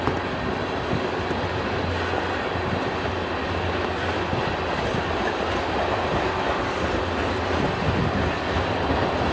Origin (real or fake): real